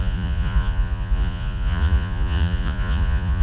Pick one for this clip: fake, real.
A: fake